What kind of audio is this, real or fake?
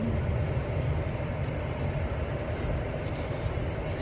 real